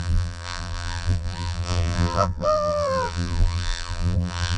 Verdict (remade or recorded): remade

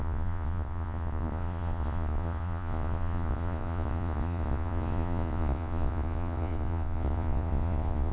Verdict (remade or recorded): remade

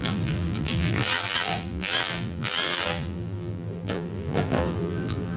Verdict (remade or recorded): remade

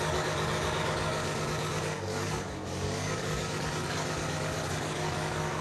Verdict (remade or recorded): remade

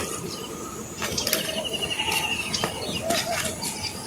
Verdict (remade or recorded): recorded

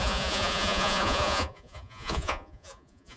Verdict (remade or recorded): remade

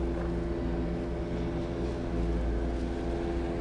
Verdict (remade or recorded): recorded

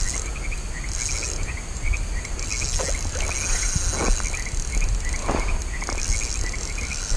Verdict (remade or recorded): recorded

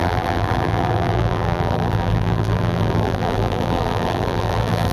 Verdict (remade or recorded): remade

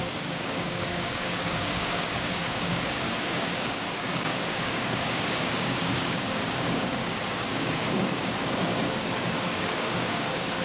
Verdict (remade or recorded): remade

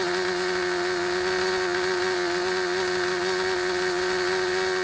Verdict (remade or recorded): recorded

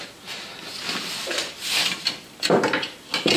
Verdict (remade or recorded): recorded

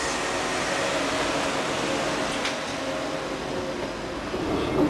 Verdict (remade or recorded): recorded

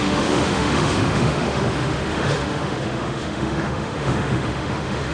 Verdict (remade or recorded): remade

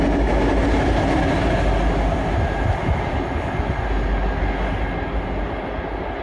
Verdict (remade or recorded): recorded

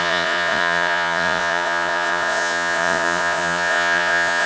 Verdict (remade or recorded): remade